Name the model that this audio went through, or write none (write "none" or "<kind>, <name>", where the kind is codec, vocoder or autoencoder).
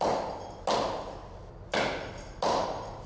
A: none